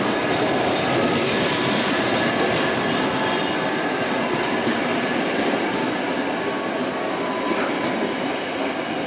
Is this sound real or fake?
real